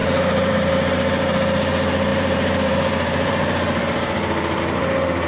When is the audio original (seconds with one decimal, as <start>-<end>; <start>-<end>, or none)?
0.7-2.1; 4.6-5.3